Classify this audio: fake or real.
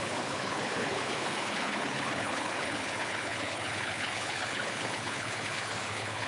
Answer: fake